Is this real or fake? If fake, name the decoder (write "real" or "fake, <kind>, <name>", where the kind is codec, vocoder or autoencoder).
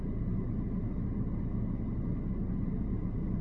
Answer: real